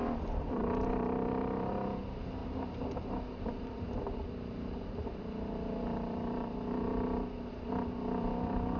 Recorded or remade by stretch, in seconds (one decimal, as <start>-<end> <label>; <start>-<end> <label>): 0.0-8.8 remade